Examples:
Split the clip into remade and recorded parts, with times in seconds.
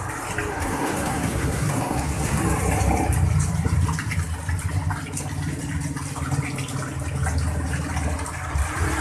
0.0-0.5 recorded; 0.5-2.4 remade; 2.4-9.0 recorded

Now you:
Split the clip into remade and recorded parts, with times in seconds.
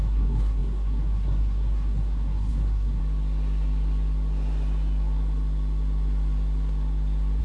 0.0-3.0 remade; 3.0-7.4 recorded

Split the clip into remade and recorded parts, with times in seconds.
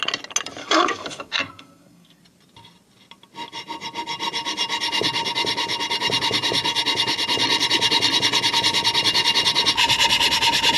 0.0-0.6 recorded; 0.6-2.2 remade; 2.2-10.8 recorded